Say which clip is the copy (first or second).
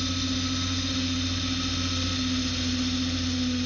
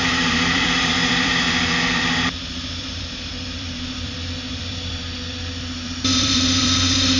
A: second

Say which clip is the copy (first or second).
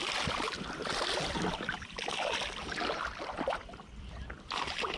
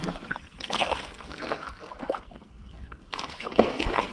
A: second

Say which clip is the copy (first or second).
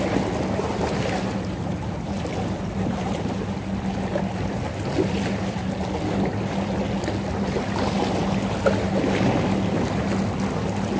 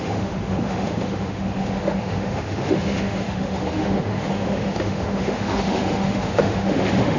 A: second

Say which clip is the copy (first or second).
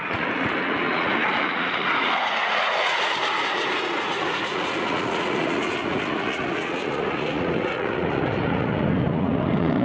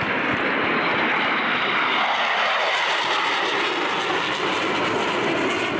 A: first